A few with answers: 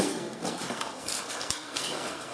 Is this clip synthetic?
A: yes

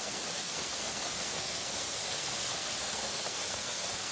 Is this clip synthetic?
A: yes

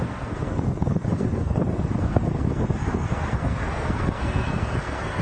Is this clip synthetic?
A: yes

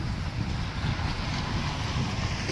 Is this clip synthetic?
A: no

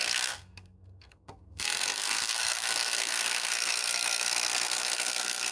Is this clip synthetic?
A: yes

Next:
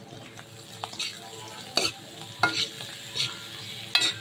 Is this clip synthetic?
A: no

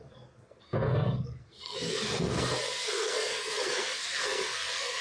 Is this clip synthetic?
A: yes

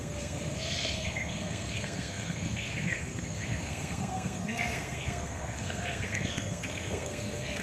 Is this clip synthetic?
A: yes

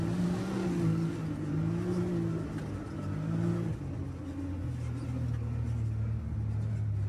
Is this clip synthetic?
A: no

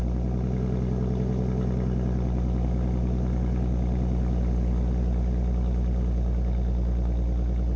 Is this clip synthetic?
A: no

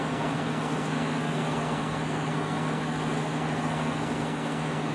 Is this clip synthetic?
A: yes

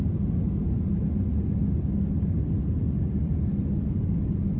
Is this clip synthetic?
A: no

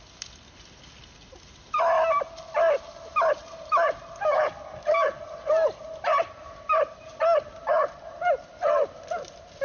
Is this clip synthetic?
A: no